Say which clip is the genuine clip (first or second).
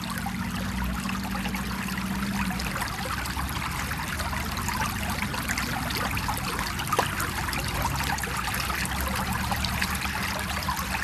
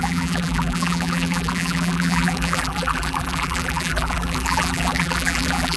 first